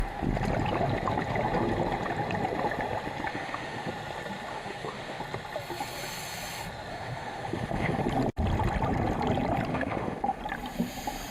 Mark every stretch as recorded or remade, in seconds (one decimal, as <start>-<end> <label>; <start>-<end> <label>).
0.0-3.3 recorded; 3.3-3.9 remade; 3.9-4.5 recorded; 4.5-5.2 remade; 5.2-6.9 recorded; 6.9-8.0 remade; 8.0-9.7 recorded; 9.7-10.4 remade; 10.4-11.3 recorded